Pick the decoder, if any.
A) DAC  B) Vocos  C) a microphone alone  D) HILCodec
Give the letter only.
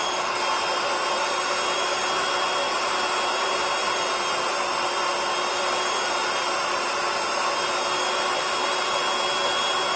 C